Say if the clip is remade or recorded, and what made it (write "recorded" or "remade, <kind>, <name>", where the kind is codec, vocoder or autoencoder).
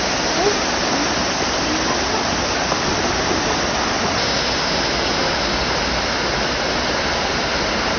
recorded